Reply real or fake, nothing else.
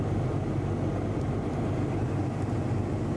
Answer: real